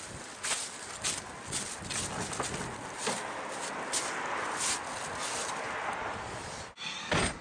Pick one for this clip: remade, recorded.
recorded